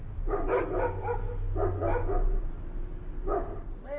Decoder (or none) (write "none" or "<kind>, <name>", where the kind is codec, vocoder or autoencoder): none